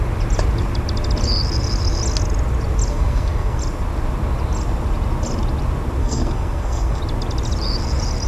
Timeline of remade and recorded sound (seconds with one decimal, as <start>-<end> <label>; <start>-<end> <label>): 0.0-2.9 recorded; 2.9-3.6 remade; 3.6-6.0 recorded; 6.0-7.0 remade; 7.0-8.3 recorded